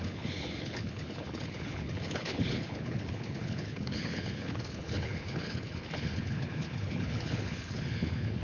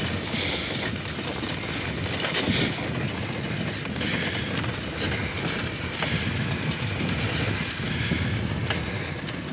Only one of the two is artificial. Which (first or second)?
first